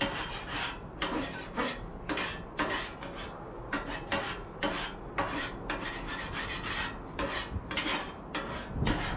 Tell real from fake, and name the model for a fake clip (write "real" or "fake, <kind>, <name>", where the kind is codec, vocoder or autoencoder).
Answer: real